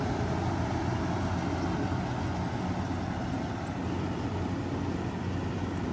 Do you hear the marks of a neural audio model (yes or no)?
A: no